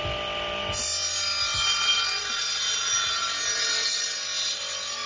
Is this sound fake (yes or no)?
no